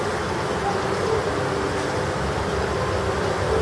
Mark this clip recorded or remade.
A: recorded